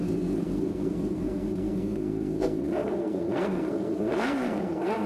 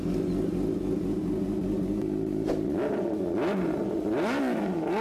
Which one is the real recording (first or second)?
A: second